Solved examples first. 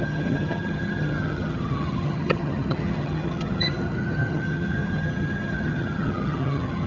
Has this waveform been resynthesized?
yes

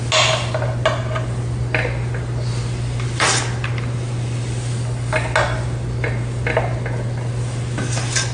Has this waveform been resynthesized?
no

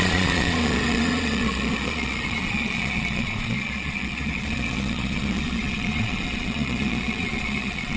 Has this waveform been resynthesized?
yes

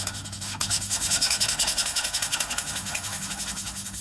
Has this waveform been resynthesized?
yes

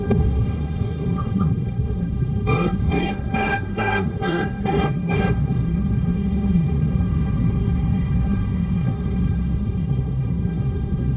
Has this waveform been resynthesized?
yes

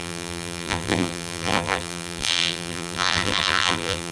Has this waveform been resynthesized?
yes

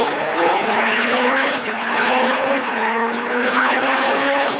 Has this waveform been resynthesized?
yes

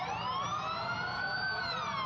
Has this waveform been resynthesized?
yes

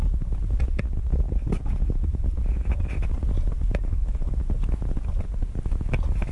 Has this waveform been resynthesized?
no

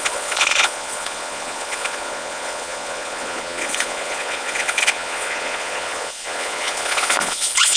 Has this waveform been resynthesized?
yes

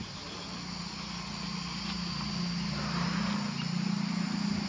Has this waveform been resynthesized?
no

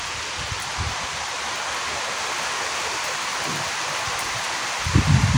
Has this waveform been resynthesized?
no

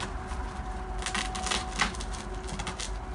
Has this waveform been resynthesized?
no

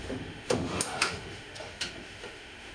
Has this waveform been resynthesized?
yes